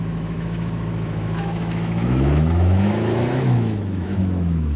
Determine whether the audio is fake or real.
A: fake